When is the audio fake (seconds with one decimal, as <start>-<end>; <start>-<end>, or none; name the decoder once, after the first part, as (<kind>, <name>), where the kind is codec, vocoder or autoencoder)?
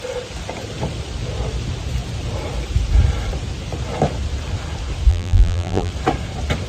5.1-5.9 (vocoder, BigVGAN v2)